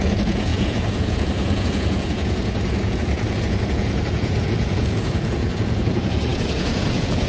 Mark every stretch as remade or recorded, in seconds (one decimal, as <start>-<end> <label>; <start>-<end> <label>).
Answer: 0.0-7.3 remade